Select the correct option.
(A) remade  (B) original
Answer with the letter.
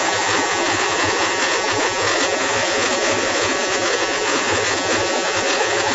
A